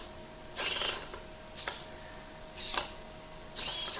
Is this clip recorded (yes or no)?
yes